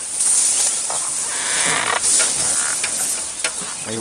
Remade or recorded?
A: recorded